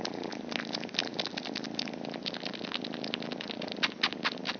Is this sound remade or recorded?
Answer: recorded